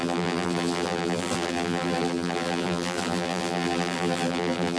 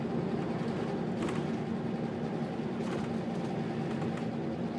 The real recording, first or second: second